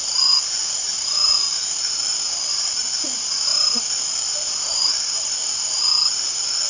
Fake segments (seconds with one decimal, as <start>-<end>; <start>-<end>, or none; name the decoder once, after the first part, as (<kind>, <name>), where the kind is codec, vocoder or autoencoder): none